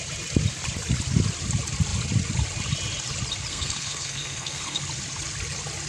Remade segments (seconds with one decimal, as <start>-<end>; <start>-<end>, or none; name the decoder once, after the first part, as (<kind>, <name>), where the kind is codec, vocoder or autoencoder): 3.5-4.8 (codec, SNAC)